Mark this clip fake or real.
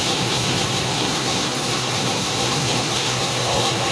fake